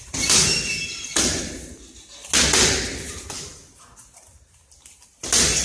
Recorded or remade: recorded